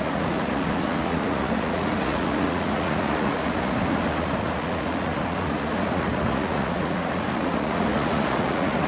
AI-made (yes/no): yes